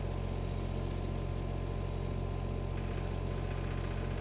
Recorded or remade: recorded